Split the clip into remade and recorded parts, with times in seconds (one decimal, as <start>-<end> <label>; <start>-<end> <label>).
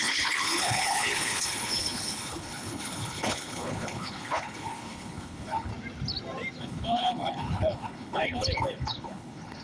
0.0-5.7 remade; 5.7-6.6 recorded; 6.6-9.6 remade